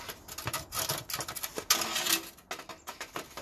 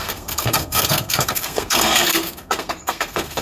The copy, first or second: second